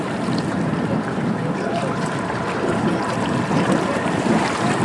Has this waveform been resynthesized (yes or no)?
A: no